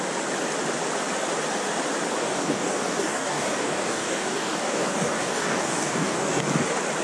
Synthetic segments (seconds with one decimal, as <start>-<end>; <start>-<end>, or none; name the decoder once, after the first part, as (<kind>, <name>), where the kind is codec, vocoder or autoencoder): 2.2-6.4 (codec, DAC)